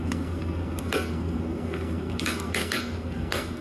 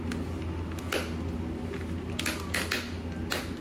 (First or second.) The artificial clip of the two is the first